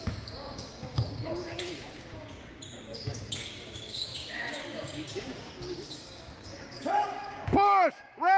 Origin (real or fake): fake